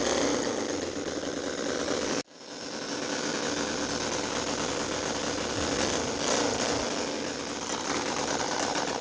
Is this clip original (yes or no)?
yes